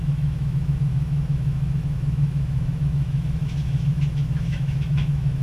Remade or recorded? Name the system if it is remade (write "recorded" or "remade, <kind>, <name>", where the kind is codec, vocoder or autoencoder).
remade, autoencoder, DAC-VAE